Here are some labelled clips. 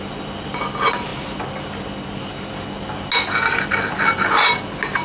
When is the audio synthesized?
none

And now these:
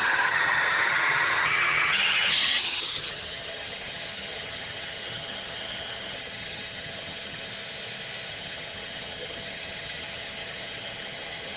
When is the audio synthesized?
0.0-7.5 (vocoder, HiFi-GAN); 8.3-11.6

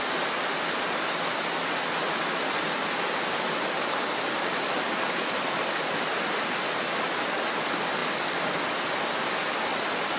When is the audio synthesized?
8.0-8.5 (vocoder, BigVGAN v2); 9.4-10.2

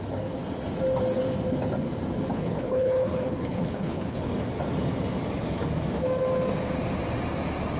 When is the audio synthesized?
2.3-4.3 (codec, HILCodec)

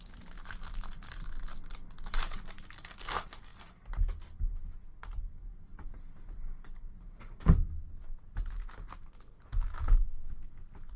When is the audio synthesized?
none